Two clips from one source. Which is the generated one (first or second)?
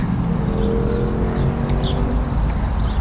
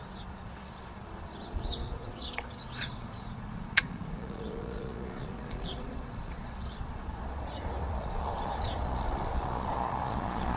second